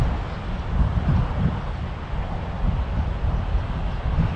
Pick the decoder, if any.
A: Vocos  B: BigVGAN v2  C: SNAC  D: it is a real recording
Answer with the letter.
D